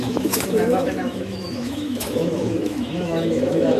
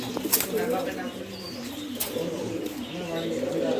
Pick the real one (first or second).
second